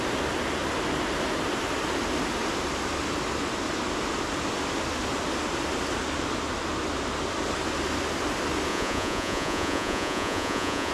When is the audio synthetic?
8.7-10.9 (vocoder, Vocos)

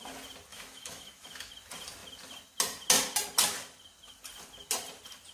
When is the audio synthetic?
0.5-1.5 (autoencoder, DAC-VAE)